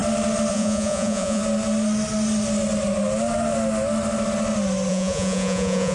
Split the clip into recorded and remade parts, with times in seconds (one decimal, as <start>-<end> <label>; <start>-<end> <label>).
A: 0.0-0.5 recorded; 0.5-1.4 remade; 1.4-4.9 recorded; 4.9-5.9 remade